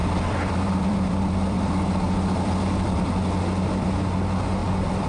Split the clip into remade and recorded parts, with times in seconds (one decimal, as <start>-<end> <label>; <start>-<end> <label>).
0.0-3.1 remade; 3.1-4.6 recorded; 4.6-5.1 remade